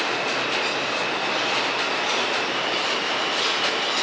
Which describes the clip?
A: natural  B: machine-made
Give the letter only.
A